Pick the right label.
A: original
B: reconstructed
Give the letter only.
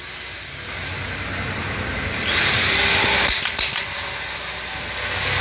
A